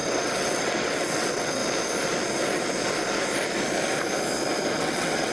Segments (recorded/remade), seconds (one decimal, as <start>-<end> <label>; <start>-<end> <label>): 0.0-1.6 remade; 1.6-4.8 recorded; 4.8-5.3 remade